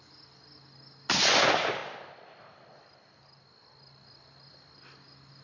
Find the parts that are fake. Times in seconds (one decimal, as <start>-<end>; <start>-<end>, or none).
none